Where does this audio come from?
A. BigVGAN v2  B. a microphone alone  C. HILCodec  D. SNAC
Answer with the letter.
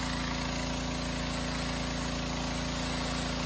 B